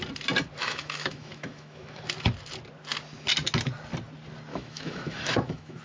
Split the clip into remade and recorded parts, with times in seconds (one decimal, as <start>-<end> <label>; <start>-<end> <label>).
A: 0.0-0.6 recorded; 0.6-2.0 remade; 2.0-4.5 recorded; 4.5-5.8 remade